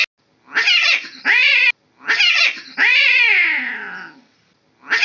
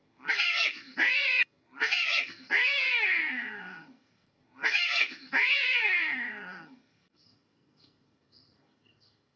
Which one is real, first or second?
first